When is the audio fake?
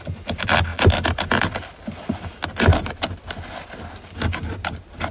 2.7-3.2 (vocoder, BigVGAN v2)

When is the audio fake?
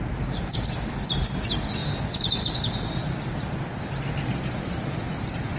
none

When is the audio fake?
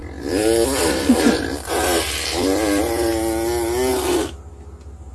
0.0-3.1 (vocoder, BigVGAN v2)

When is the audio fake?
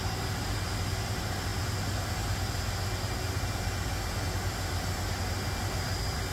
none